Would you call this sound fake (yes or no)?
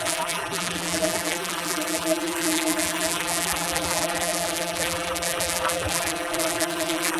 yes